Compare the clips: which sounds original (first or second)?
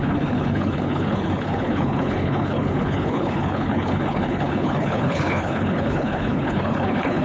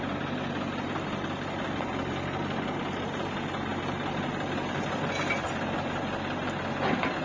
second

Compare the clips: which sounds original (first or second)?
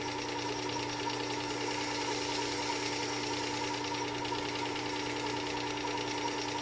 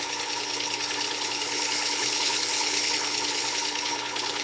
first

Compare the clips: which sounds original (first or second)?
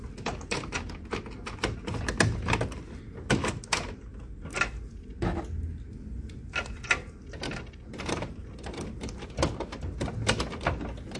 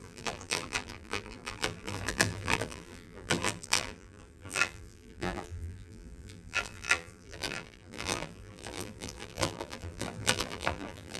first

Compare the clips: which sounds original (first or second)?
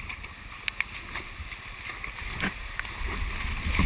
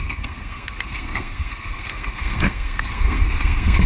first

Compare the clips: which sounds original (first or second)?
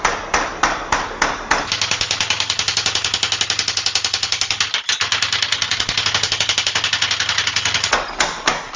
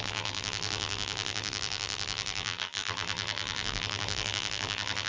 first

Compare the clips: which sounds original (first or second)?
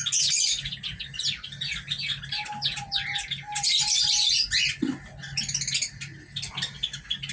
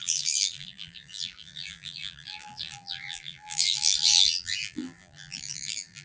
first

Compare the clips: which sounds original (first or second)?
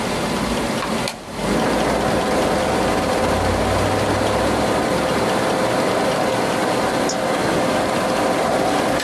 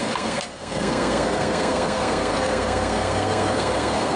first